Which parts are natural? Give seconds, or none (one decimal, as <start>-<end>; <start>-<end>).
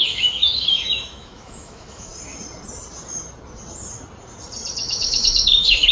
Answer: 2.1-4.7